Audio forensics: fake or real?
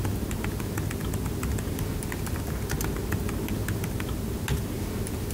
real